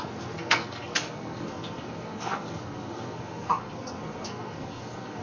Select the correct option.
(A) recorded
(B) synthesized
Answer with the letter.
B